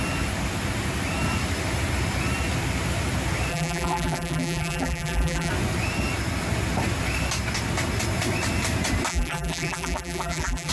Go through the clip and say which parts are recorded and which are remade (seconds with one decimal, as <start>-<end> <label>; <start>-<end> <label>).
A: 0.0-3.5 recorded; 3.5-5.5 remade; 5.5-9.1 recorded; 9.1-10.7 remade